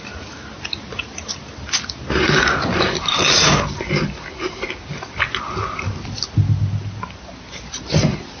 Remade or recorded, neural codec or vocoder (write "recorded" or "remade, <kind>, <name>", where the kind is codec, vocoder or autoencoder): recorded